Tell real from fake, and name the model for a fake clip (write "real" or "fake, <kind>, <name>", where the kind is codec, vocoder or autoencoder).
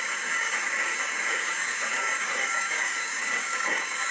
fake, codec, DAC